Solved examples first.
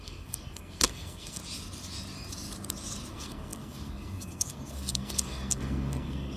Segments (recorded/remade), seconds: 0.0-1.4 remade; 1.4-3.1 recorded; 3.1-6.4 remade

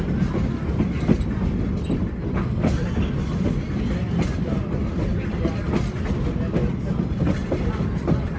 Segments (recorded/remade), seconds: 0.0-8.4 recorded